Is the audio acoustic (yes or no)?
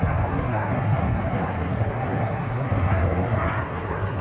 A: no